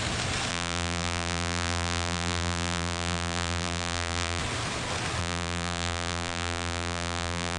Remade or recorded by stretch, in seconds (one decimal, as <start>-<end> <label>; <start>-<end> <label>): 0.0-0.5 recorded; 0.5-4.4 remade; 4.4-5.2 recorded; 5.2-7.6 remade